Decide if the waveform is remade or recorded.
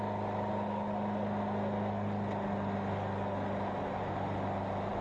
recorded